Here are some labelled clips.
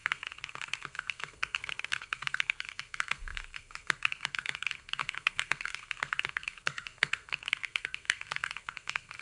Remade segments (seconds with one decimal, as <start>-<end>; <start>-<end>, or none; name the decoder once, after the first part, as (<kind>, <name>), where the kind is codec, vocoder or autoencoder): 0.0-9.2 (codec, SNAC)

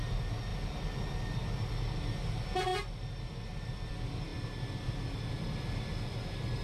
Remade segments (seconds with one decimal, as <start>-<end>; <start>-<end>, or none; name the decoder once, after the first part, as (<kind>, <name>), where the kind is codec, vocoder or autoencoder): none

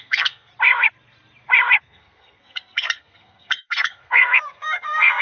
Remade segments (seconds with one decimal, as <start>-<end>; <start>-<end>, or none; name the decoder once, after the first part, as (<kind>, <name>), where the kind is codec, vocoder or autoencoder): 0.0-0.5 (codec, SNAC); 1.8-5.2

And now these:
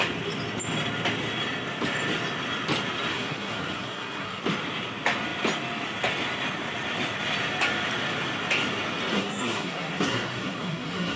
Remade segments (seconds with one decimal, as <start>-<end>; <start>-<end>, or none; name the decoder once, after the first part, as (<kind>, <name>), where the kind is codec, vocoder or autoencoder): 3.1-4.4 (codec, SNAC); 9.1-11.2

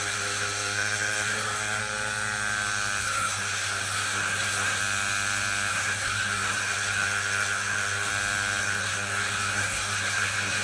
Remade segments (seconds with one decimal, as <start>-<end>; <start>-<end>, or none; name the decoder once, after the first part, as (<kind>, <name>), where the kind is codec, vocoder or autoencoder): 0.0-1.8 (codec, SNAC); 3.0-4.8; 5.7-8.1; 8.6-10.6

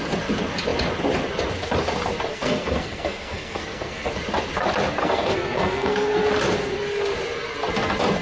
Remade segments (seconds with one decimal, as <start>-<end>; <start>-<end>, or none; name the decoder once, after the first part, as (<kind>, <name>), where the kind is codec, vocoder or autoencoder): 2.3-4.1 (codec, SNAC); 5.0-6.2